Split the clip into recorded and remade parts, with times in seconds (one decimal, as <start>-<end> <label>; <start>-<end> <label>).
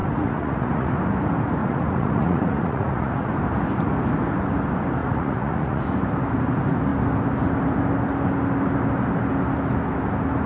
0.0-0.9 remade; 0.9-1.6 recorded; 1.6-3.3 remade; 3.3-5.0 recorded; 5.0-5.8 remade; 5.8-10.5 recorded